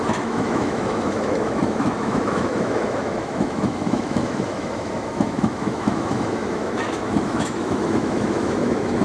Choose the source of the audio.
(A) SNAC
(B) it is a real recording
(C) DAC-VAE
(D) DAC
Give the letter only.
C